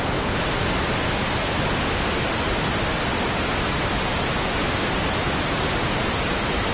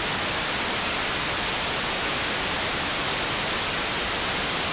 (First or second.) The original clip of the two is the first